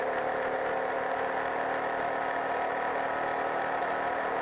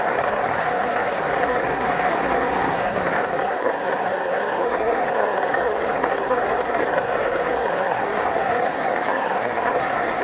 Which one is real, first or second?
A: first